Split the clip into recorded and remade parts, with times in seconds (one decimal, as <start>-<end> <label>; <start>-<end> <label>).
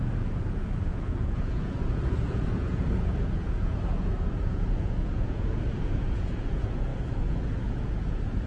0.0-8.5 remade